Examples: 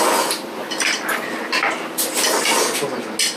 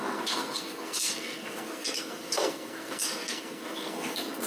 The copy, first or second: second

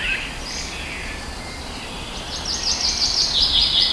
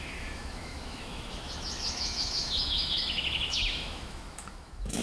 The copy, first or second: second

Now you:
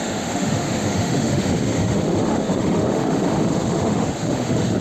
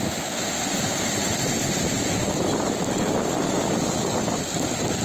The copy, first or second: first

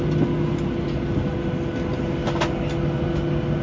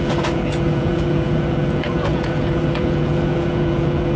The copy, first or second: second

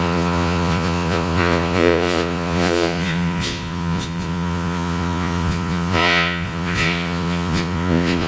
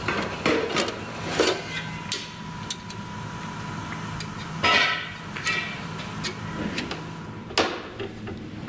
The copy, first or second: first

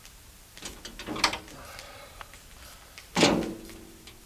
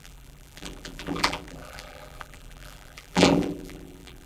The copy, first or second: second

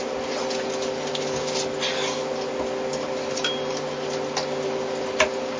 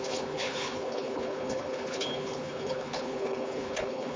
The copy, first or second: second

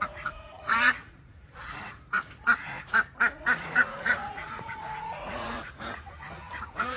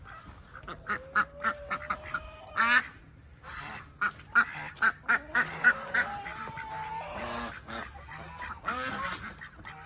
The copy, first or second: first